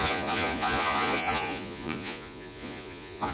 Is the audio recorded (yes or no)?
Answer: no